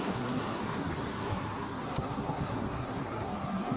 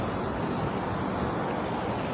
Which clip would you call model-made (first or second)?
first